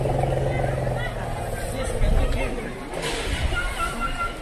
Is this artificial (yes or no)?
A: no